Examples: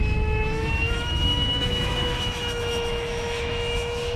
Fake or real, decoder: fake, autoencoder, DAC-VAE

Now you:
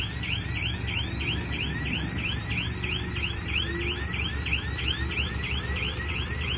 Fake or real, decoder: real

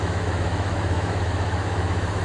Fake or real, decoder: fake, autoencoder, DAC-VAE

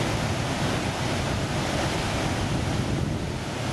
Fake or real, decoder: real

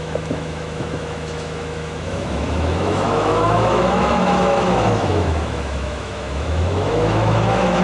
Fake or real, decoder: fake, autoencoder, DAC-VAE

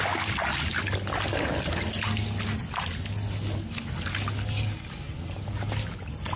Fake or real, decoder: real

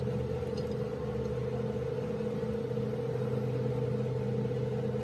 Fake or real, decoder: real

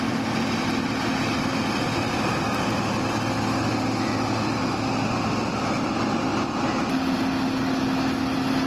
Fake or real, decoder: real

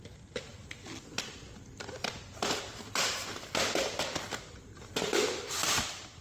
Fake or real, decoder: real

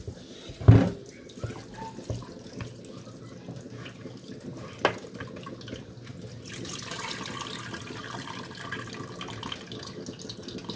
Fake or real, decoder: real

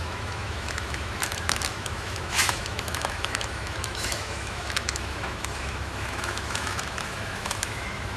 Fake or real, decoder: fake, autoencoder, DAC-VAE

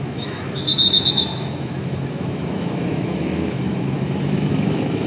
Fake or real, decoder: fake, autoencoder, DAC-VAE